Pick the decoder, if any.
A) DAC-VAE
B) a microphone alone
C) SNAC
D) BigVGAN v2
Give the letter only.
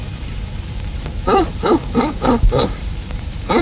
D